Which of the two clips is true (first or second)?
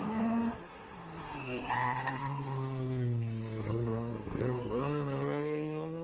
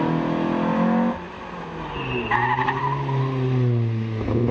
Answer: second